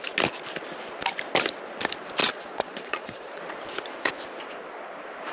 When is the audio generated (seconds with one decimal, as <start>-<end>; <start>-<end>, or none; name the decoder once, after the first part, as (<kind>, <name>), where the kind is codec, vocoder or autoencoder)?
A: 2.2-3.4 (vocoder, Vocos)